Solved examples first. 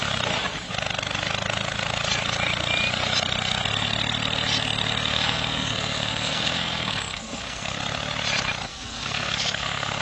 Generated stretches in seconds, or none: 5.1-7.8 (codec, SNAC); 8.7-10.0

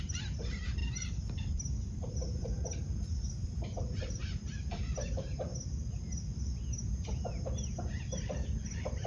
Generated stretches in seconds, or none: 0.0-5.5 (vocoder, BigVGAN v2); 8.3-9.1

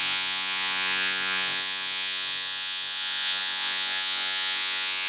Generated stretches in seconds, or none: 0.0-5.1 (vocoder, Vocos)

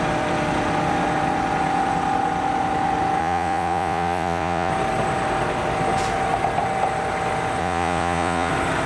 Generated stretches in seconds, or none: 3.2-4.7 (vocoder, Vocos); 7.6-8.5